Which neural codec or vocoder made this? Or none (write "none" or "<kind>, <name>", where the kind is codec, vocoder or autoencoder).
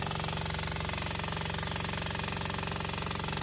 none